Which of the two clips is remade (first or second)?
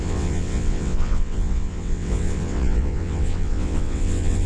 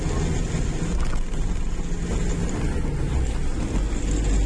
first